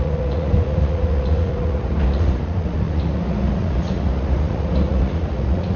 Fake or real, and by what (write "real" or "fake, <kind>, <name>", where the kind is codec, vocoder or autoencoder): fake, vocoder, Vocos